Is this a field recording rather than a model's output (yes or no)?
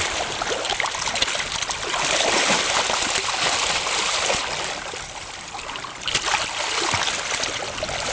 yes